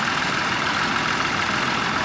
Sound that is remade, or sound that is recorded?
recorded